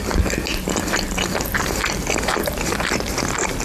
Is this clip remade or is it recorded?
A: recorded